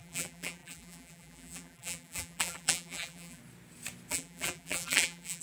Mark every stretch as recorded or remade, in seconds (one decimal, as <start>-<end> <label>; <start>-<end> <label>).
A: 0.0-3.4 remade; 3.4-4.1 recorded; 4.1-5.4 remade